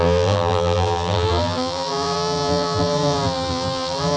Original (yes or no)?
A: no